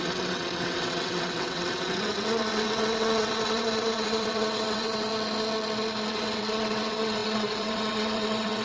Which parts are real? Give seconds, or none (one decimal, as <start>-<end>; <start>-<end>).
5.1-6.1